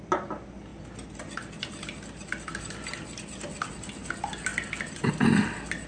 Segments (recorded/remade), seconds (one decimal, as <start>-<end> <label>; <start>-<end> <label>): 0.0-0.7 recorded; 0.7-3.7 remade; 3.7-4.5 recorded; 4.5-5.1 remade; 5.1-5.9 recorded